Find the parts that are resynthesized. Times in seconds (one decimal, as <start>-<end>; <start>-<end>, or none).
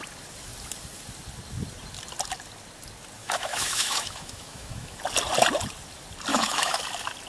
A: 3.2-5.0; 6.3-6.8